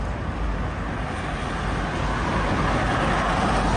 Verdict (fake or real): real